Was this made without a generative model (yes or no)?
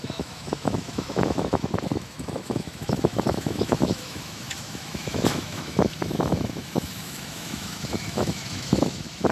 no